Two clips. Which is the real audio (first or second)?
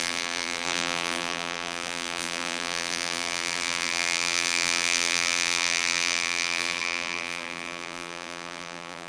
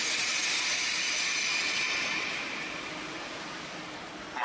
second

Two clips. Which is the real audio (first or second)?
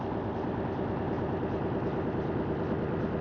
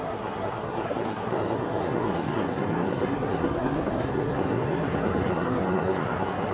first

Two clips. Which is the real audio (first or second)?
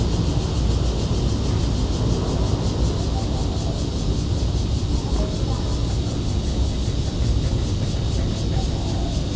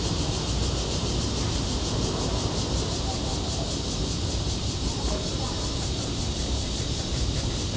first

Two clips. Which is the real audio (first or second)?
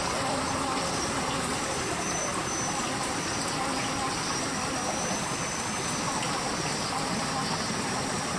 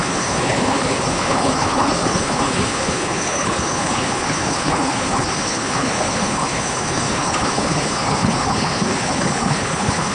first